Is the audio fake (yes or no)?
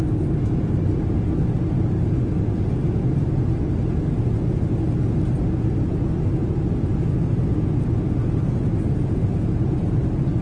no